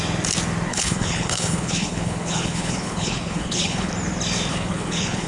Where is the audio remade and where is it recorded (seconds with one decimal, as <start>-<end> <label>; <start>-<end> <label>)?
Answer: 0.0-0.7 recorded; 0.7-3.9 remade; 3.9-4.5 recorded; 4.5-5.3 remade